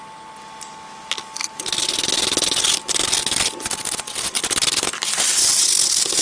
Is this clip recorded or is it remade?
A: recorded